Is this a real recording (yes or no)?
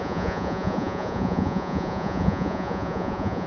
no